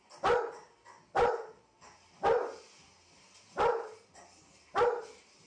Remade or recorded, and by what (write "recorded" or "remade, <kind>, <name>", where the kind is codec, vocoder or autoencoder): recorded